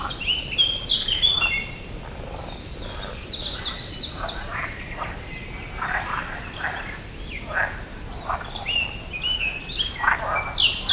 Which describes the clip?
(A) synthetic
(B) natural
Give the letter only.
B